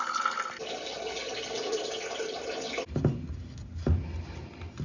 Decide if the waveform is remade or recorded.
recorded